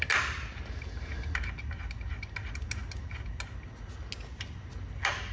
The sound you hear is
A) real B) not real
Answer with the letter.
A